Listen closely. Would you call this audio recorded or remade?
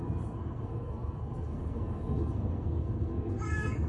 remade